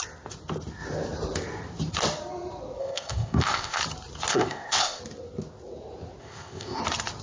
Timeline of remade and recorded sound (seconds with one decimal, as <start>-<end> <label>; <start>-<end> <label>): 0.0-2.8 recorded; 2.8-3.8 remade; 3.8-4.3 recorded; 4.3-5.0 remade; 5.0-6.2 recorded; 6.2-6.8 remade; 6.8-7.2 recorded